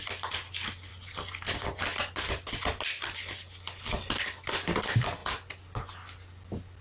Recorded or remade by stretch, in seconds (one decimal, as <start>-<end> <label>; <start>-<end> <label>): 0.0-6.8 recorded